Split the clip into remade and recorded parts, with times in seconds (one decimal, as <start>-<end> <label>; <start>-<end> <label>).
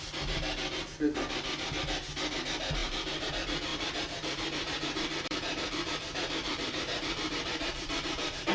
0.0-2.8 recorded; 2.8-3.3 remade; 3.3-3.7 recorded; 3.7-8.5 remade